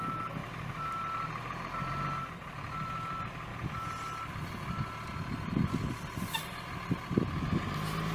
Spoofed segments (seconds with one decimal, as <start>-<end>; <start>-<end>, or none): 0.4-1.0